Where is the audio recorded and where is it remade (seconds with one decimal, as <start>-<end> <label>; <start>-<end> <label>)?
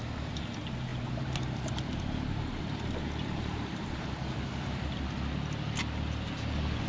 0.0-0.9 recorded; 0.9-4.0 remade; 4.0-6.9 recorded